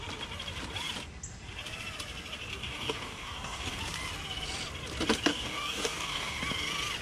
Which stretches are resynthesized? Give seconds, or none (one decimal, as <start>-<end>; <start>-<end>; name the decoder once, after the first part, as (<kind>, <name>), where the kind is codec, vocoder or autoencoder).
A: 2.5-3.8 (codec, DAC); 5.3-6.4